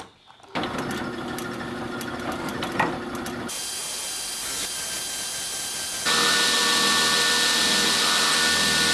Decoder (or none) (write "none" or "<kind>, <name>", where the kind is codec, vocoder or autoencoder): none